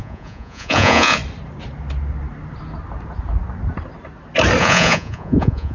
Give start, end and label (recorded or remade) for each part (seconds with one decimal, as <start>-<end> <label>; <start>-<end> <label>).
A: 0.0-1.2 remade; 1.2-4.6 recorded; 4.6-5.7 remade